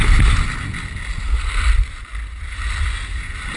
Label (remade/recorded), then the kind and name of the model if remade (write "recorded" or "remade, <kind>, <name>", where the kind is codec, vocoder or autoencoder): recorded